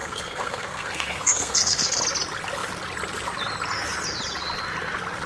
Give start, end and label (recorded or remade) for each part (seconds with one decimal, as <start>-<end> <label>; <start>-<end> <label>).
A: 0.0-2.0 remade; 2.0-5.3 recorded